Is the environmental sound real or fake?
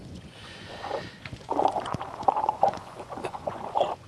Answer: fake